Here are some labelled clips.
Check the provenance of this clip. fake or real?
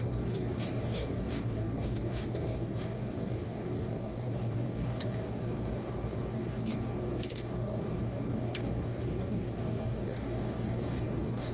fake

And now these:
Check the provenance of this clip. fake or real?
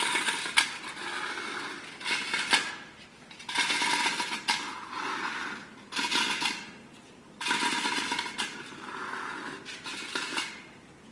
real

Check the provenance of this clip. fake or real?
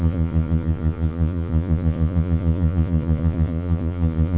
fake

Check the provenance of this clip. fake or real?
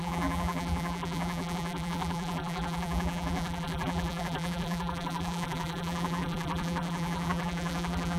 fake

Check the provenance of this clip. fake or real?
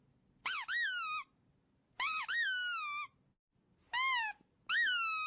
real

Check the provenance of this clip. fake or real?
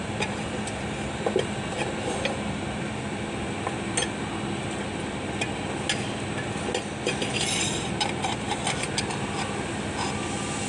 real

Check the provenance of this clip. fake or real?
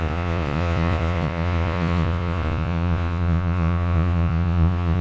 fake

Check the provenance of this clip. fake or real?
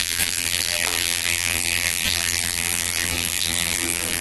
fake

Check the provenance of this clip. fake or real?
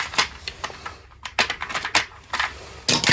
real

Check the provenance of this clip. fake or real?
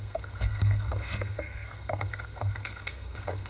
fake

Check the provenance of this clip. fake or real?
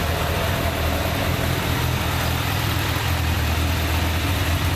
real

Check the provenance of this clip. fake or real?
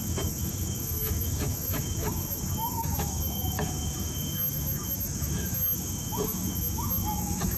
fake